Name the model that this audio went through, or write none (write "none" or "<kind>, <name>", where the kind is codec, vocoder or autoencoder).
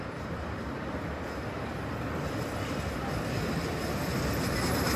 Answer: none